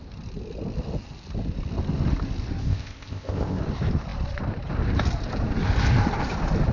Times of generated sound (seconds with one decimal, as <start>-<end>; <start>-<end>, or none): 2.6-3.6